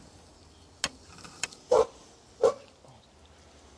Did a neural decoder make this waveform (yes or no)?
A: no